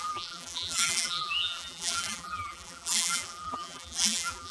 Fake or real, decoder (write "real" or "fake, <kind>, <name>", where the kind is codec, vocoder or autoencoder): fake, vocoder, BigVGAN v2